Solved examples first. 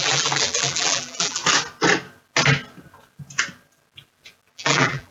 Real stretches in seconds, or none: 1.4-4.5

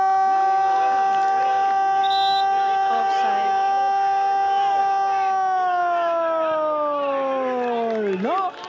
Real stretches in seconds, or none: 0.0-8.7

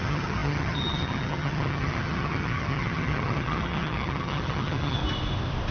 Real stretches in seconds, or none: 5.0-5.7

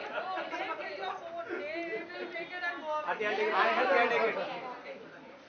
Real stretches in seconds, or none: 0.0-5.5

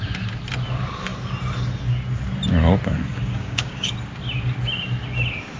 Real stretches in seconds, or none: 0.0-3.1; 3.9-5.6

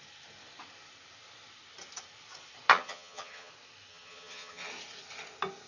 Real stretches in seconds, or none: 0.0-2.7; 3.5-3.9; 4.7-5.7

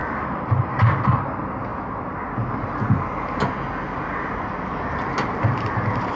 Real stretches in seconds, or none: 0.0-6.2

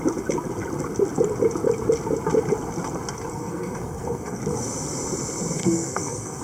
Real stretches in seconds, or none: 0.0-3.3; 4.4-5.6